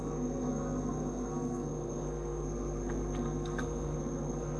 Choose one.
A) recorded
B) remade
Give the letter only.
B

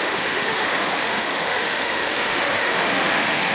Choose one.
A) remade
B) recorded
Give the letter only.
A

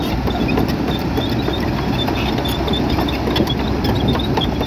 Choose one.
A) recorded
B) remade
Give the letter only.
A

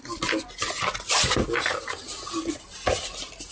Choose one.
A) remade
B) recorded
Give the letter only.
B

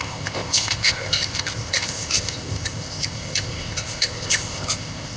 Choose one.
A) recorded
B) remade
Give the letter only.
B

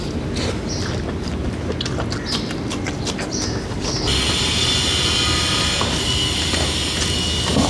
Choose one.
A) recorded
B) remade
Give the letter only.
A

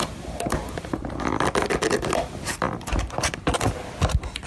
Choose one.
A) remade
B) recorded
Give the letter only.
B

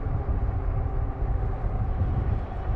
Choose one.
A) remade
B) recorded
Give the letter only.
B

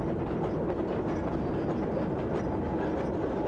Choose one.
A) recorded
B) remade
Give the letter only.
A